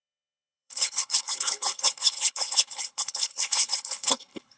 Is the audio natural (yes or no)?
no